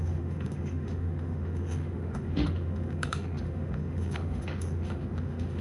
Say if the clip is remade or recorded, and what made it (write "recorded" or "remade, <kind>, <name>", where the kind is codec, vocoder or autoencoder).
remade, autoencoder, DAC-VAE